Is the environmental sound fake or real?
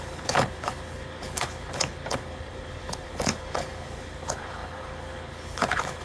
fake